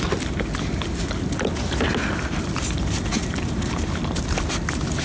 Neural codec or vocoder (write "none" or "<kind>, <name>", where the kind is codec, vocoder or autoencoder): none